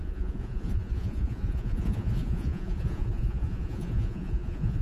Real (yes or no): no